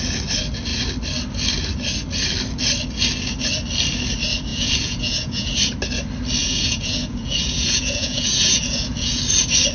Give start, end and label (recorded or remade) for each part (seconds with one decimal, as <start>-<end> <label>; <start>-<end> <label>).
0.0-4.5 recorded; 4.5-5.6 remade; 5.6-6.4 recorded; 6.4-9.2 remade; 9.2-9.7 recorded